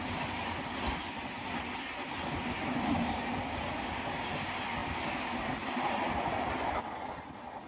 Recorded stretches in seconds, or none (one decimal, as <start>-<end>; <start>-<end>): 0.0-7.7